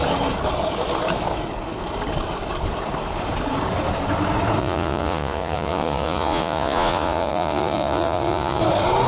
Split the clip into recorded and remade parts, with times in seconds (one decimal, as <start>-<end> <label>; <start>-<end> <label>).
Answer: 0.0-4.6 recorded; 4.6-8.6 remade; 8.6-9.1 recorded